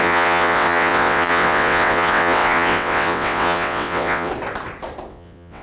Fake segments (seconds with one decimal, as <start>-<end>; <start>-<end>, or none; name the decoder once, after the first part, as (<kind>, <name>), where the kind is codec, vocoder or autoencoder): 0.0-4.3 (vocoder, WaveNeXt); 5.1-5.6